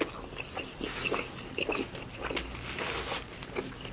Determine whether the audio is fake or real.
real